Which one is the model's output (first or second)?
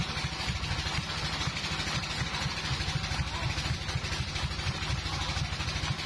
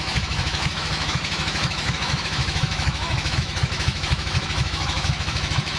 second